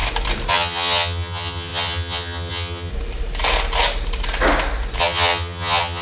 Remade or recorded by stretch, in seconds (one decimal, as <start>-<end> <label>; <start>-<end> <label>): 0.0-0.5 recorded; 0.5-2.9 remade; 2.9-5.0 recorded; 5.0-6.0 remade